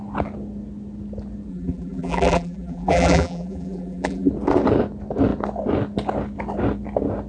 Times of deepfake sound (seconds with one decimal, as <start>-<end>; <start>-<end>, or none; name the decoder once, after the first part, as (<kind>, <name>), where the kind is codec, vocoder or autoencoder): 1.5-4.3 (vocoder, BigVGAN v2)

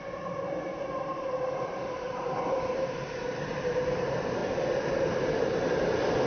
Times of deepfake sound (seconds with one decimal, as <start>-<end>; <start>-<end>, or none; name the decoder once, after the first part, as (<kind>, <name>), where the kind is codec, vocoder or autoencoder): 0.0-4.4 (vocoder, BigVGAN v2)

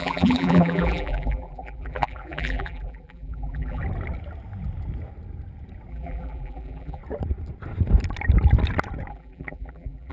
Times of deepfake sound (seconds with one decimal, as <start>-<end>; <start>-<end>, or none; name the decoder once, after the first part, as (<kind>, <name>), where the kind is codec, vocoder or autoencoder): 0.0-3.8 (vocoder, BigVGAN v2); 5.9-7.0; 9.1-10.1

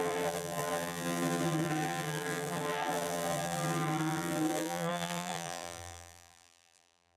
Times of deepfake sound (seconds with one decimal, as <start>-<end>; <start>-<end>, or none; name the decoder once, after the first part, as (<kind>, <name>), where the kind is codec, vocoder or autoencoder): 0.0-7.2 (vocoder, BigVGAN v2)